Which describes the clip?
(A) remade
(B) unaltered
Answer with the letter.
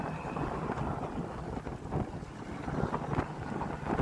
B